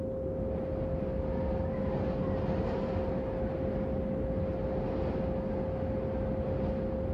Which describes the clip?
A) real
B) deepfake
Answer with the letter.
A